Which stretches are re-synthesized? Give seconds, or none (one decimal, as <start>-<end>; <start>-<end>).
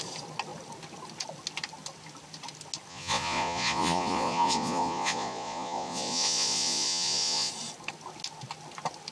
2.9-7.5